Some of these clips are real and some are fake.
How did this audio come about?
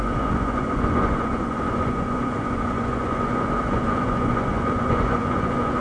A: fake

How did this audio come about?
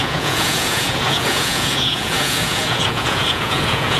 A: fake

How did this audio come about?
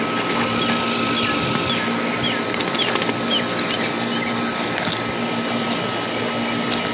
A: real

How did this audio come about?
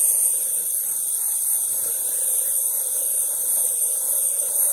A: real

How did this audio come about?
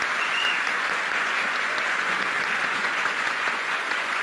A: fake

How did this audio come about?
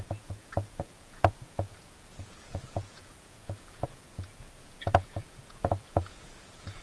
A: fake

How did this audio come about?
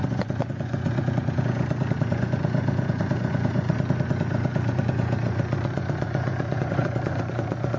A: fake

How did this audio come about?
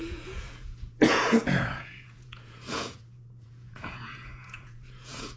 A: fake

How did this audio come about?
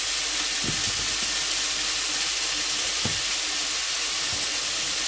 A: real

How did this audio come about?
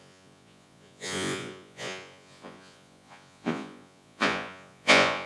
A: fake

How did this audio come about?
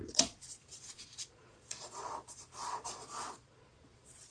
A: fake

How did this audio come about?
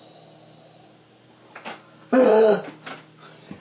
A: real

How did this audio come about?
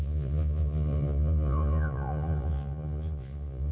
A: fake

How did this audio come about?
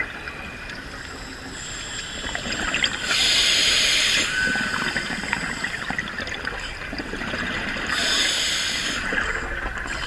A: real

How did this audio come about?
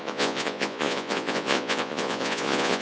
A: fake